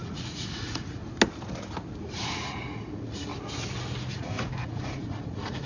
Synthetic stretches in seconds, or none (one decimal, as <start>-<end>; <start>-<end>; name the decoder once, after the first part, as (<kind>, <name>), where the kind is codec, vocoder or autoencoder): 0.0-1.0 (vocoder, Vocos); 2.0-3.3; 4.1-5.7